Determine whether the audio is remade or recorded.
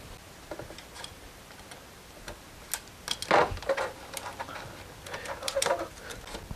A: recorded